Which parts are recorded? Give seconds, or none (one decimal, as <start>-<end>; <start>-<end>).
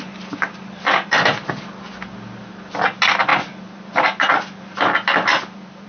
0.0-5.9